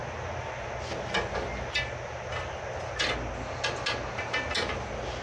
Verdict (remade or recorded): recorded